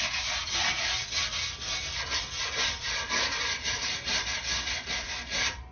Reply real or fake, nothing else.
real